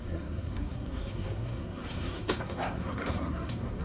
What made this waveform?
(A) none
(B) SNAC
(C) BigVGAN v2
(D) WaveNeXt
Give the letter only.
B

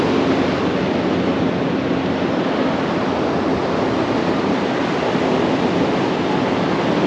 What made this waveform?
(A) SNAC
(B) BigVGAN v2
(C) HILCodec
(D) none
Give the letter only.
D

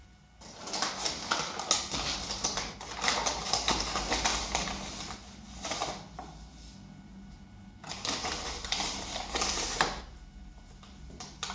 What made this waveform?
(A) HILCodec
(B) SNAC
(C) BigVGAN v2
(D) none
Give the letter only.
D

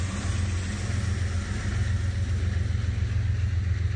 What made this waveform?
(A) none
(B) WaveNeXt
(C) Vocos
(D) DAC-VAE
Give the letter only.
A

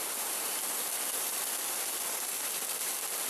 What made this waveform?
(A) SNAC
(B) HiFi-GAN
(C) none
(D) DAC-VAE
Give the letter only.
C